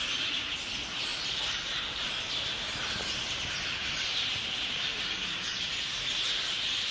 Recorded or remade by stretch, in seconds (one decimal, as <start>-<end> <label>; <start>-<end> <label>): 0.0-1.1 recorded; 1.1-2.8 remade; 2.8-3.8 recorded; 3.8-5.7 remade; 5.7-6.9 recorded